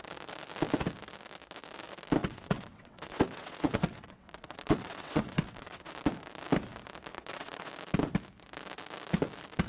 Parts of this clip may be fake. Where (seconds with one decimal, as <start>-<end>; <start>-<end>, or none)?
2.2-5.9; 7.1-7.7